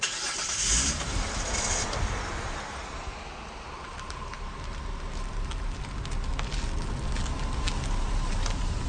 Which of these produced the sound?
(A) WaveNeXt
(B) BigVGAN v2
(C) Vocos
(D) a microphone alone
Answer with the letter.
D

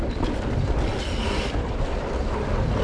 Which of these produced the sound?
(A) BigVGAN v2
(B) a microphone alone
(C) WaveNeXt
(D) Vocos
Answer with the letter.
B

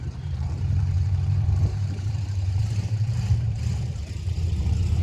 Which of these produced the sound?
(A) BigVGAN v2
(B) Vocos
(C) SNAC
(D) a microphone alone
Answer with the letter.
A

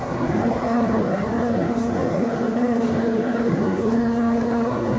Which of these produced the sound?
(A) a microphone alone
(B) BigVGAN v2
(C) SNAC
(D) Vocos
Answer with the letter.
C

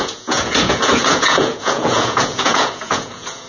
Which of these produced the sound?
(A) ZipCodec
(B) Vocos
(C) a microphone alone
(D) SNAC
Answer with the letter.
B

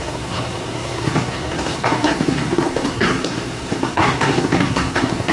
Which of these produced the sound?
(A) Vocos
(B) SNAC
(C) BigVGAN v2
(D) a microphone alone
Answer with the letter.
B